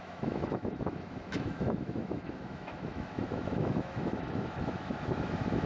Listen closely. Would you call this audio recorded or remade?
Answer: remade